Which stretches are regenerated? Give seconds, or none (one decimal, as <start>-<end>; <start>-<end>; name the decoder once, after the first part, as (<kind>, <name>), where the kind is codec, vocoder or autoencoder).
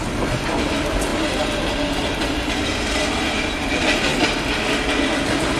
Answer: none